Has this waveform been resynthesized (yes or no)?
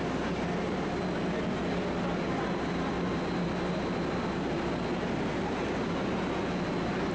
no